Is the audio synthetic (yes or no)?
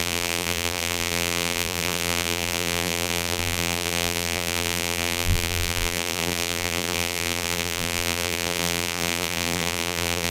yes